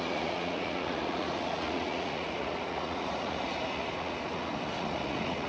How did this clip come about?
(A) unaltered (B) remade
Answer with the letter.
B